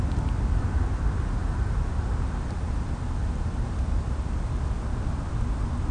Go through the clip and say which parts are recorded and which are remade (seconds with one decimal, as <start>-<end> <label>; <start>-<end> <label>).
0.0-5.9 recorded